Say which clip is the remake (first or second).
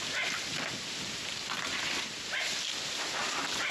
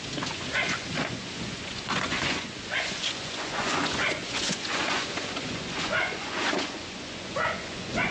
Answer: second